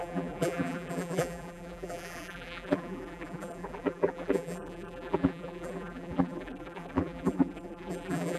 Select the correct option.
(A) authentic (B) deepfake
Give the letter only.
B